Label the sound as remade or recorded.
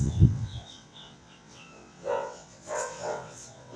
remade